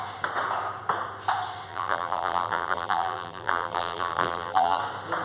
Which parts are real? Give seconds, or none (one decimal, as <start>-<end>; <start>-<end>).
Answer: 0.0-1.7; 4.8-5.2